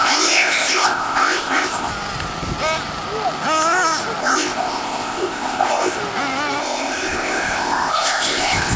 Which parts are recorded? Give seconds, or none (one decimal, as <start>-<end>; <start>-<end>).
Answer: 1.9-4.2; 6.0-6.6